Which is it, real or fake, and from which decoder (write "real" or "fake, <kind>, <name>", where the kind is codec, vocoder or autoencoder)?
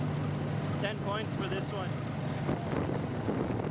real